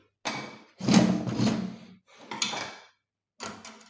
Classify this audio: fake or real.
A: real